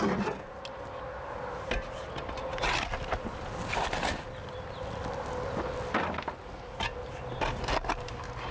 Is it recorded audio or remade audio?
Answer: recorded